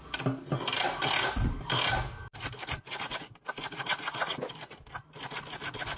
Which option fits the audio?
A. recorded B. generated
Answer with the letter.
A